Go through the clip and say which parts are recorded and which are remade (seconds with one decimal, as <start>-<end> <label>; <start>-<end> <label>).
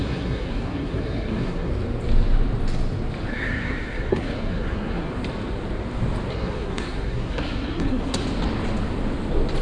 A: 0.0-1.7 remade; 1.7-3.3 recorded; 3.3-5.1 remade; 5.1-6.3 recorded; 6.3-8.2 remade; 8.2-9.6 recorded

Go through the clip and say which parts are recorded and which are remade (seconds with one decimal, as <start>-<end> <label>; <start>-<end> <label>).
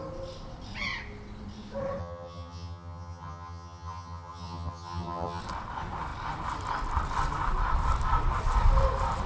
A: 0.0-2.0 recorded; 2.0-5.4 remade; 5.4-9.3 recorded